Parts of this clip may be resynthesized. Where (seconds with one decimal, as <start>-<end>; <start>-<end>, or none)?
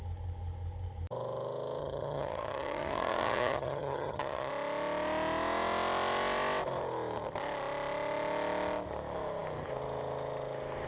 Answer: 1.8-4.5